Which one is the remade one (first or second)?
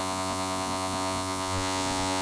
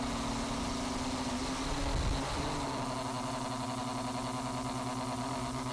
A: first